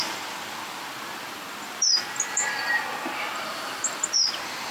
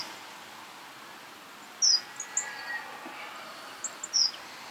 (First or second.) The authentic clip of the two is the second